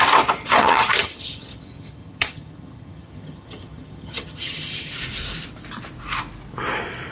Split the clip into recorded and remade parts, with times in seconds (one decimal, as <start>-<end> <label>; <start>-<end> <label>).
0.0-0.6 recorded; 0.6-4.9 remade; 4.9-7.1 recorded